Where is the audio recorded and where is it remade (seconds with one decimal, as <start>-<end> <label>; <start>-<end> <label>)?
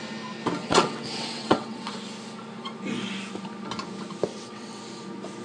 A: 0.0-0.6 recorded; 0.6-1.9 remade; 1.9-4.3 recorded; 4.3-4.8 remade; 4.8-5.4 recorded